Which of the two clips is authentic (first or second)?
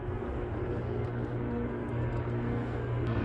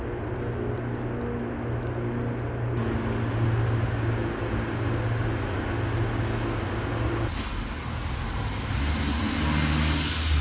second